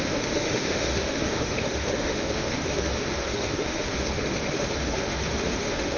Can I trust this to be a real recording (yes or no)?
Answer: no